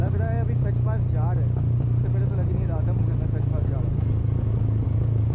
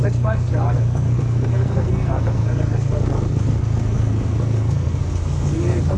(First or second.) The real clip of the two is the first